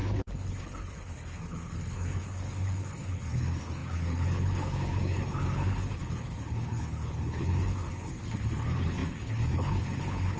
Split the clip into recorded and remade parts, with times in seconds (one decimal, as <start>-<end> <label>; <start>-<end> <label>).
0.0-10.4 remade